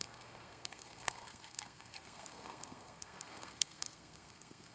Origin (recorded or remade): remade